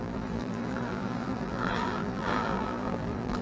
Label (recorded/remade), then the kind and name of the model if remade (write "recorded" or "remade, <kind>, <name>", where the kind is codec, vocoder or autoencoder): remade, vocoder, BigVGAN v2